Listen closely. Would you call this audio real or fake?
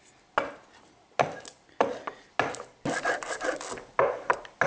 real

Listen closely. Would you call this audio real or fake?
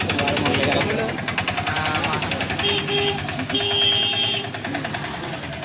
real